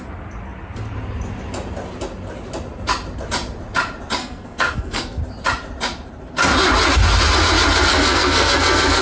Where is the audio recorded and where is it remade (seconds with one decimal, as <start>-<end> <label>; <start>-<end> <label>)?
0.0-4.2 recorded; 4.2-5.2 remade; 5.2-7.9 recorded; 7.9-9.0 remade